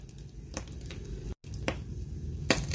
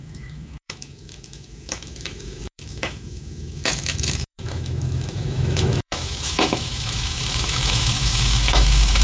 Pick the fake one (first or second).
second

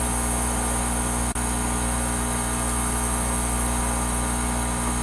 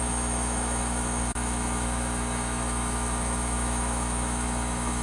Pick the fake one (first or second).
second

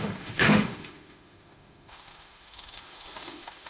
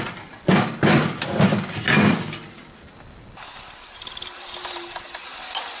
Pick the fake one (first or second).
first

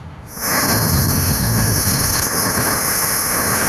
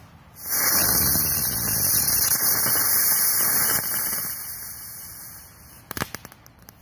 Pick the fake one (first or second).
first